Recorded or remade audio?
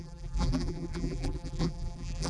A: remade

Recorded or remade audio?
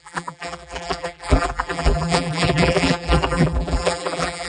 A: remade